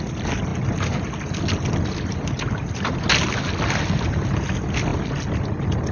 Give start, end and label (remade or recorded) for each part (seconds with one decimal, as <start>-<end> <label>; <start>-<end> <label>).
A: 0.0-5.9 recorded